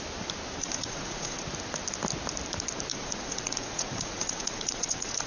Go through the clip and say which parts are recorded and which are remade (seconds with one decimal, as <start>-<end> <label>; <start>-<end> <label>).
0.0-0.6 recorded; 0.6-1.4 remade; 1.4-2.9 recorded; 2.9-5.3 remade